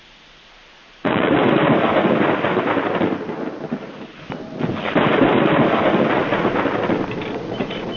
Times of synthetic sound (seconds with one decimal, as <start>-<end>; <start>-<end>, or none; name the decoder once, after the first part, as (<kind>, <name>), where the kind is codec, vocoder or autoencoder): 0.0-1.4 (vocoder, Vocos); 6.1-6.5; 7.3-8.0